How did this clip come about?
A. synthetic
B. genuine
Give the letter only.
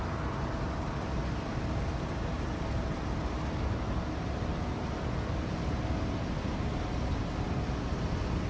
B